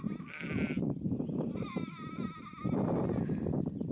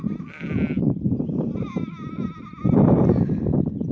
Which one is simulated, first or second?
first